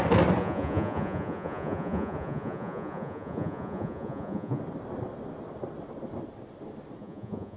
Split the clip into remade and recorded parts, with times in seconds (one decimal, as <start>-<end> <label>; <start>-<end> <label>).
0.0-0.4 recorded; 0.4-4.6 remade; 4.6-7.0 recorded; 7.0-7.6 remade